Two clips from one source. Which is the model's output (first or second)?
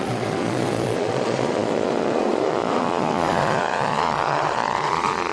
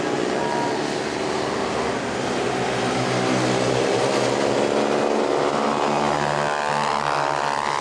first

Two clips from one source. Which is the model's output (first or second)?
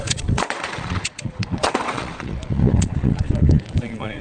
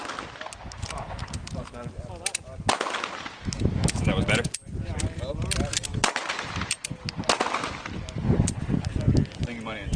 first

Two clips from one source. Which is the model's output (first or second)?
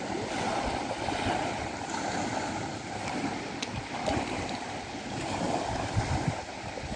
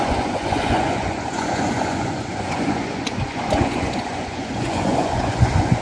second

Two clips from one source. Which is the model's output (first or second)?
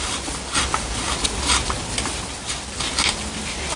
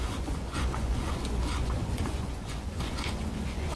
second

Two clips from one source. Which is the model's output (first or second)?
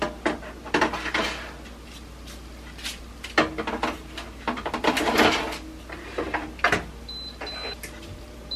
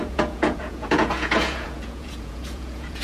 second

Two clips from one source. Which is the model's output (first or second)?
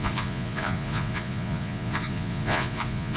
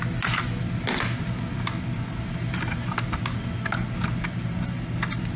first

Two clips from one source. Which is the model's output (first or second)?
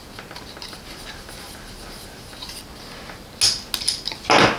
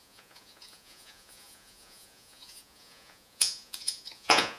second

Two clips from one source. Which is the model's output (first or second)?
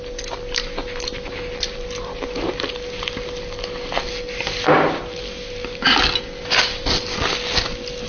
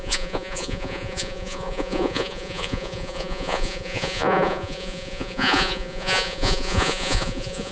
second